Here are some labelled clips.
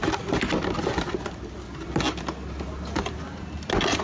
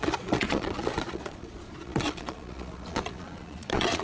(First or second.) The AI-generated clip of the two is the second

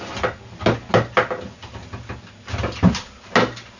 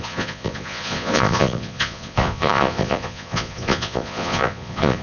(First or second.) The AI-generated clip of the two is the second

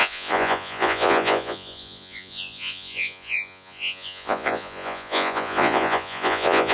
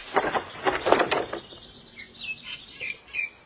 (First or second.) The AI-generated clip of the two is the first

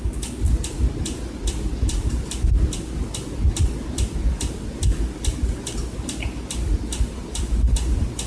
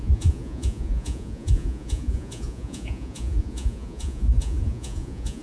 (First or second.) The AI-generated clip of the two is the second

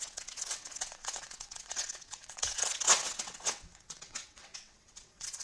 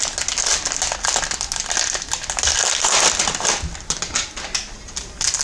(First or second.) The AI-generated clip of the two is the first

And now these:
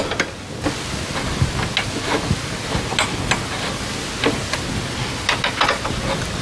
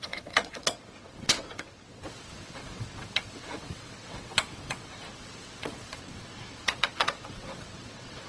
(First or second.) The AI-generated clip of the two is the second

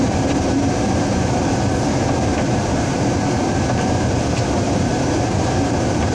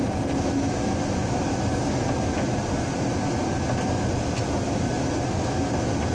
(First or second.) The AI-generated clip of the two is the first